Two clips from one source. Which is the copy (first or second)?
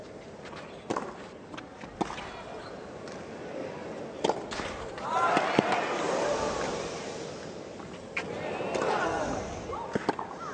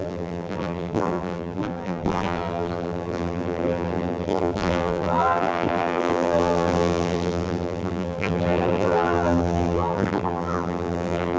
second